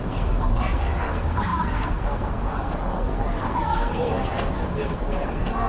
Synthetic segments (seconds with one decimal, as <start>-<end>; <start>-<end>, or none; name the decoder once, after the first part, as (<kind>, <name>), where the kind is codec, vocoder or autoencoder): 0.0-5.7 (codec, SNAC)

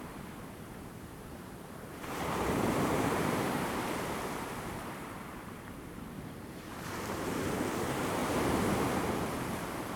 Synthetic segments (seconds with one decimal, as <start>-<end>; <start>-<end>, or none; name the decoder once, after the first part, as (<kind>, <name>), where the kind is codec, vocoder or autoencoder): 0.0-8.2 (vocoder, BigVGAN v2); 9.5-10.0

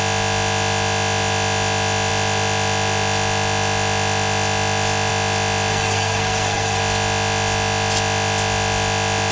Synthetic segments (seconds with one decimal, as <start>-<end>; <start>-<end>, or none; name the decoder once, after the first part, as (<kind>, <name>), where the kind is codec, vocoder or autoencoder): 5.7-6.8 (codec, SNAC)

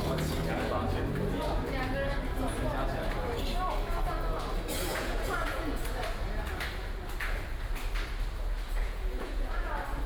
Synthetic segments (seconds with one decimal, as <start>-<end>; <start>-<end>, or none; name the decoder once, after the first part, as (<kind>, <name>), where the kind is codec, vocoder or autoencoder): 4.9-5.8 (vocoder, Vocos); 8.8-9.7

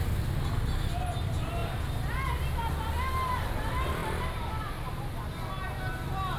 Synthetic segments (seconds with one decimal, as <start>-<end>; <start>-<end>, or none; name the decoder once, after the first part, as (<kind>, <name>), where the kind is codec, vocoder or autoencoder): none

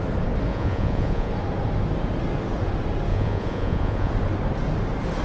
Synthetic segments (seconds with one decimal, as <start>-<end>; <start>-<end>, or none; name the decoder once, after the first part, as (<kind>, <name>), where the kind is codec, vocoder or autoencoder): 0.5-1.3 (vocoder, Vocos); 3.1-4.1